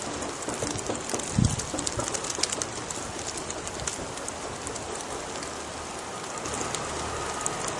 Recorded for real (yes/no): yes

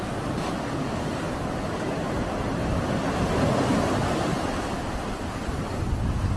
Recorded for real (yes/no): yes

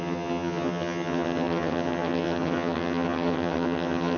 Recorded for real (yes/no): no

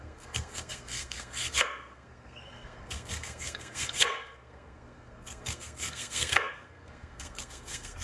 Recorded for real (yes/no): no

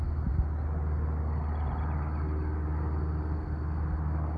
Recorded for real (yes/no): yes